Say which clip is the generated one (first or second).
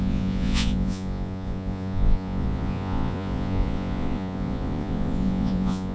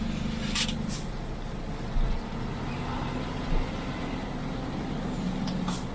first